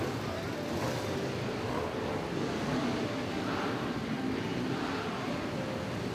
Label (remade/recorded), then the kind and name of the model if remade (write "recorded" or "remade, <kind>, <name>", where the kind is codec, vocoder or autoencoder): recorded